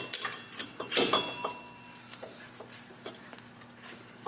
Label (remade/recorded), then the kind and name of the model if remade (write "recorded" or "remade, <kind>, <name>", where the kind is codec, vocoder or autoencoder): recorded